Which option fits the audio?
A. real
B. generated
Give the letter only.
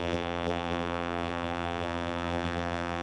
B